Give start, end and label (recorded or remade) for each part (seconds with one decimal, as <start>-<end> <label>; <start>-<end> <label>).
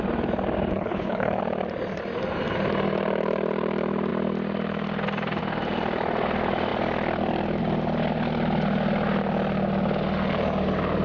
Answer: 0.0-0.7 recorded; 0.7-1.4 remade; 1.4-11.0 recorded